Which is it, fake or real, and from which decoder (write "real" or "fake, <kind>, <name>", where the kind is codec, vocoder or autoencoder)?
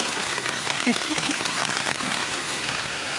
fake, codec, SNAC